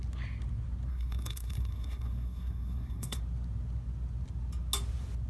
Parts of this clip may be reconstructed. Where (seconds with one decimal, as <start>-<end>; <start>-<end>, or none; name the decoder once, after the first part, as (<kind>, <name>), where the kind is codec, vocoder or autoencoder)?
0.9-3.2 (codec, SNAC)